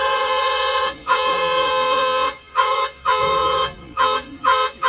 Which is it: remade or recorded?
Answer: remade